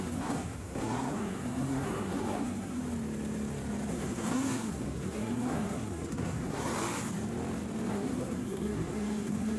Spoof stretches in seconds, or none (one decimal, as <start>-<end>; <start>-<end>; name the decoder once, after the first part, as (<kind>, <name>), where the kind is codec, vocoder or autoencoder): 0.0-2.8 (codec, SNAC); 3.9-6.7; 7.9-9.6